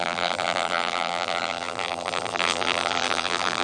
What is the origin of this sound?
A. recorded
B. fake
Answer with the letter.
B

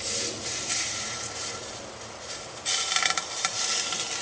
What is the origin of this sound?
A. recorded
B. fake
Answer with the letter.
A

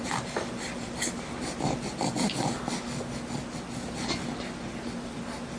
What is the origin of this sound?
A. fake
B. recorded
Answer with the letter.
B